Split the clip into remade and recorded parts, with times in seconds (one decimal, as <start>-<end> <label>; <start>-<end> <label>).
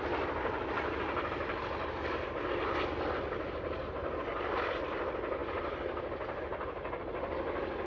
0.0-5.4 recorded; 5.4-7.1 remade; 7.1-7.9 recorded